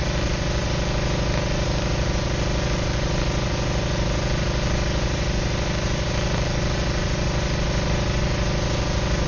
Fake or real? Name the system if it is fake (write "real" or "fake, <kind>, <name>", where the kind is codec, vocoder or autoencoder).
real